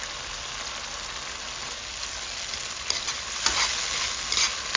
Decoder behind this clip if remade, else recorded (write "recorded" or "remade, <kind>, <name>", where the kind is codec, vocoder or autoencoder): recorded